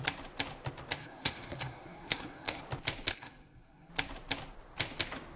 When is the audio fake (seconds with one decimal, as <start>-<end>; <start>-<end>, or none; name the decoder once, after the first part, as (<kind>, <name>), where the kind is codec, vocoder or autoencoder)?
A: 1.0-2.6 (codec, SNAC); 3.1-3.9